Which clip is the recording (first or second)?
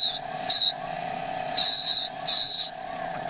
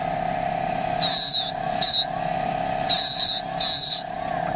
second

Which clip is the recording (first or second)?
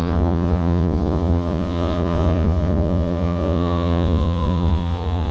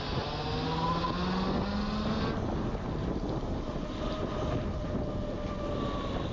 second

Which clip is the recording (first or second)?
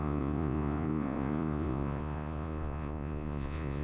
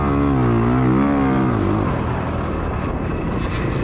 second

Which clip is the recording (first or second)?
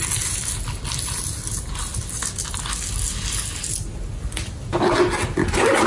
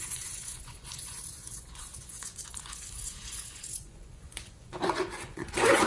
first